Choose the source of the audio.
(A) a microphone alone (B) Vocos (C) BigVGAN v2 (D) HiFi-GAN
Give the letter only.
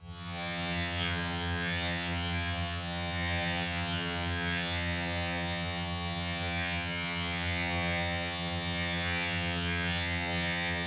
D